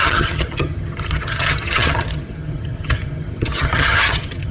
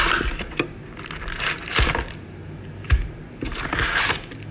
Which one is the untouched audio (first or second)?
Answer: second